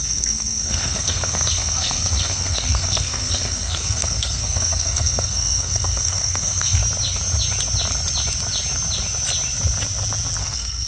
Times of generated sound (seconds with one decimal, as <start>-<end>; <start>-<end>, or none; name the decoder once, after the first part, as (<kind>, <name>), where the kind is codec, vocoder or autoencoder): 0.0-6.8 (codec, SNAC); 10.4-10.9